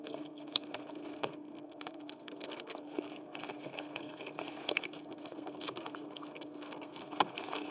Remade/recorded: remade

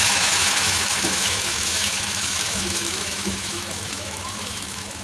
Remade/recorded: remade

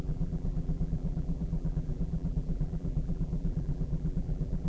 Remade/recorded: remade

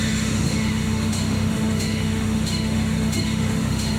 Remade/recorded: remade